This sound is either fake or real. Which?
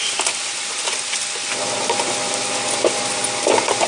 real